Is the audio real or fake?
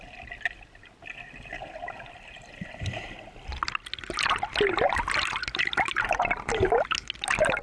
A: real